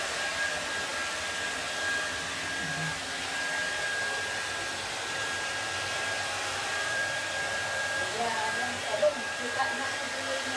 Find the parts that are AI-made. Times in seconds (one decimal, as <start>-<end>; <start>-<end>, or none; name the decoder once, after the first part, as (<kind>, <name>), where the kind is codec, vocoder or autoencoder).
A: 0.0-0.9 (vocoder, BigVGAN v2); 4.7-10.6